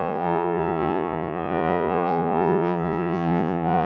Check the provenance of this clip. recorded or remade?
remade